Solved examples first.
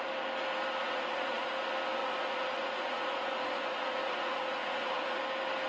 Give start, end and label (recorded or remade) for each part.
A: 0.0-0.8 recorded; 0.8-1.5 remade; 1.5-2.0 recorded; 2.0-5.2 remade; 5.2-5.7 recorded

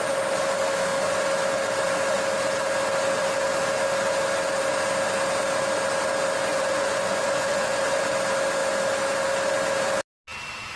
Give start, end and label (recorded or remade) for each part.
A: 0.0-6.5 recorded; 6.5-7.8 remade; 7.8-10.8 recorded

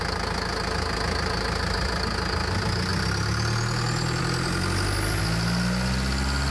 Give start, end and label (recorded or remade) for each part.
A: 0.0-6.5 recorded

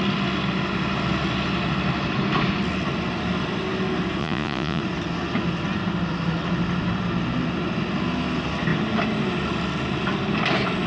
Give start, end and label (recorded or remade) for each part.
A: 0.0-4.2 recorded; 4.2-4.8 remade; 4.8-10.9 recorded

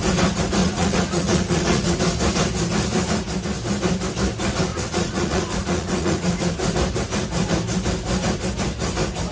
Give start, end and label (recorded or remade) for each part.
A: 0.0-0.6 recorded; 0.6-2.0 remade; 2.0-4.7 recorded; 4.7-6.5 remade; 6.5-9.3 recorded

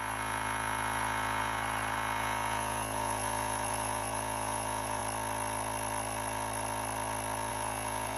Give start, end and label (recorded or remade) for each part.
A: 0.0-5.0 remade; 5.0-7.5 recorded; 7.5-8.2 remade

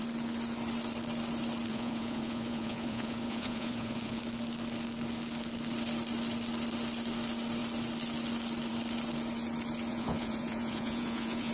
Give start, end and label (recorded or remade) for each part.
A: 0.0-1.7 recorded; 1.7-4.2 remade; 4.2-9.9 recorded; 9.9-11.5 remade

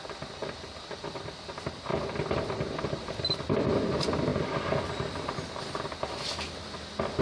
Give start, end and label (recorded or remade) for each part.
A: 0.0-7.2 recorded